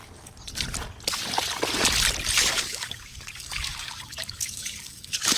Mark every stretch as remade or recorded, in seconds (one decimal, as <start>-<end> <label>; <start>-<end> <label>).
0.0-2.5 recorded; 2.5-5.4 remade